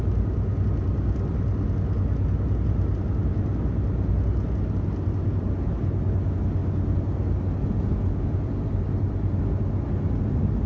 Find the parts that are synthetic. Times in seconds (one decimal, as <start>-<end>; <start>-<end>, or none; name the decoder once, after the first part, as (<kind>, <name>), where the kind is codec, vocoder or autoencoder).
none